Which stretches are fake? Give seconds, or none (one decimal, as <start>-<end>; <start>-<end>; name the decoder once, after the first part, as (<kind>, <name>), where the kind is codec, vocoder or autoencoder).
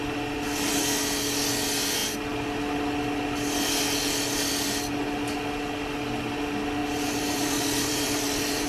6.8-8.7 (vocoder, BigVGAN v2)